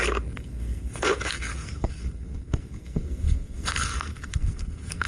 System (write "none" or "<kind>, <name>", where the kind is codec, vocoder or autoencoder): codec, SNAC